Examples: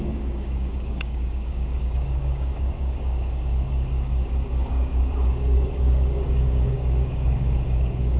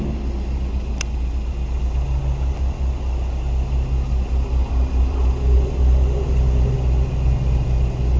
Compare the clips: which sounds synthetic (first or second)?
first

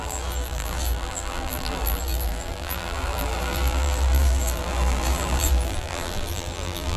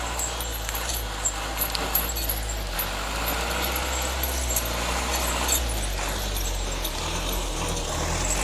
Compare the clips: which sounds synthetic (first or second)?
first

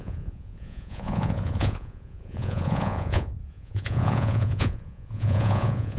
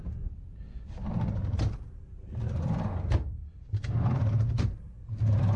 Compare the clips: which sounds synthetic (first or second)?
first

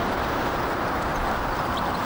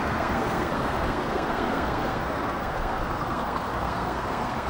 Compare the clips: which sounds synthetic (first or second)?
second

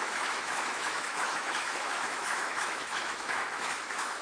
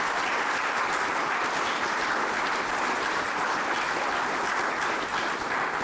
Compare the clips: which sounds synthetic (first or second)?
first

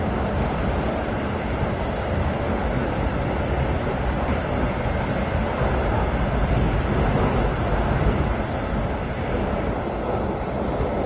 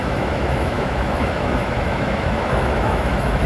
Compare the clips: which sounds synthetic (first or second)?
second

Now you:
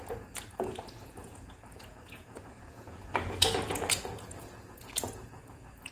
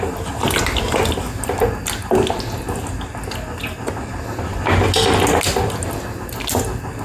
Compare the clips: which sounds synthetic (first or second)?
first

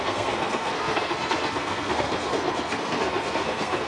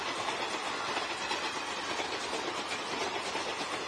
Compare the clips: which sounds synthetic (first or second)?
first